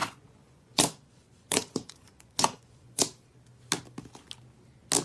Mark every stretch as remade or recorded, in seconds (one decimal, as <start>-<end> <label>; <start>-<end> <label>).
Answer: 0.0-3.0 remade; 3.0-5.0 recorded